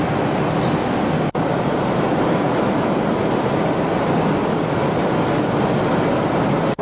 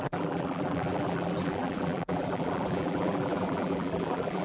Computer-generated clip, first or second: second